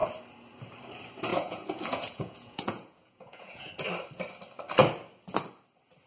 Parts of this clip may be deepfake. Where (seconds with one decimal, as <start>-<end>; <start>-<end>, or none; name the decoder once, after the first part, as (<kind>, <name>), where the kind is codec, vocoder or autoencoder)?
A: 1.3-3.7 (vocoder, Vocos)